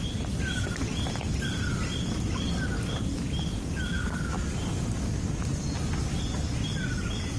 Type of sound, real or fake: real